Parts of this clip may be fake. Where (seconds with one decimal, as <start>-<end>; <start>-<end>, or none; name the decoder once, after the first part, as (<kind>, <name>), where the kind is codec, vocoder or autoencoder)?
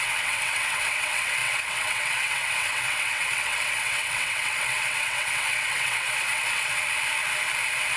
0.0-6.8 (vocoder, WaveNeXt)